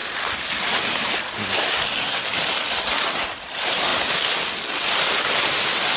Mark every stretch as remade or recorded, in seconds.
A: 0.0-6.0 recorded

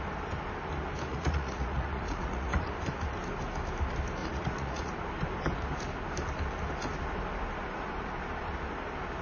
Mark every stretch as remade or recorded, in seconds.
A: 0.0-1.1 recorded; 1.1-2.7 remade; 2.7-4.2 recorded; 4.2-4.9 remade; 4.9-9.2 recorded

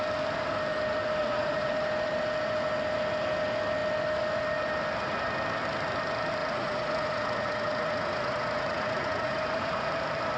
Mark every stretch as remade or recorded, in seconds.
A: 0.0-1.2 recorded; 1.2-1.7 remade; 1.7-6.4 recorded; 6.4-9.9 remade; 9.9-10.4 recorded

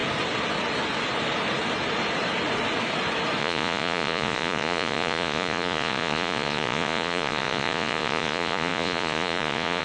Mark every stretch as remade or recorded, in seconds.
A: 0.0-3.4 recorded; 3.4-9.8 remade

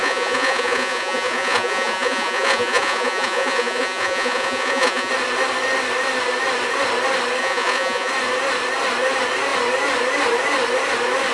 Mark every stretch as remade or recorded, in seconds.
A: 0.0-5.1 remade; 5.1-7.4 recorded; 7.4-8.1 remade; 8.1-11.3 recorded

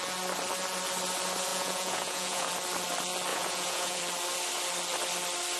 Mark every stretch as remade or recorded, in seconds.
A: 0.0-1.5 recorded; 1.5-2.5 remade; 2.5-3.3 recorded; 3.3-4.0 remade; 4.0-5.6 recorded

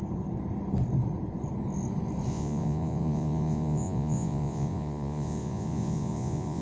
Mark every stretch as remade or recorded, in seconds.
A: 0.0-2.3 recorded; 2.3-6.6 remade

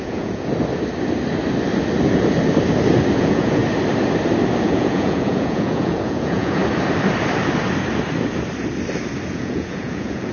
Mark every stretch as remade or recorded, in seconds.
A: 0.0-0.5 remade; 0.5-3.2 recorded; 3.2-3.6 remade; 3.6-4.6 recorded; 4.6-6.6 remade; 6.6-9.3 recorded; 9.3-10.3 remade